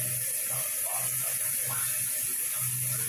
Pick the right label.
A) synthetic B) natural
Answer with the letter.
B